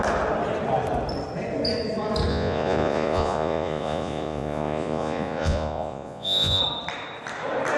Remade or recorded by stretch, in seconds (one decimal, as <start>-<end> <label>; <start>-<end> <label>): 0.0-2.3 recorded; 2.3-6.6 remade; 6.6-7.8 recorded